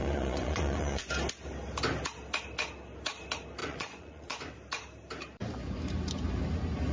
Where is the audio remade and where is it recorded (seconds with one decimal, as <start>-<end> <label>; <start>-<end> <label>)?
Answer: 0.0-1.1 remade; 1.1-3.6 recorded; 3.6-4.5 remade; 4.5-6.9 recorded